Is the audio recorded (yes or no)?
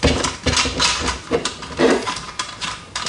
no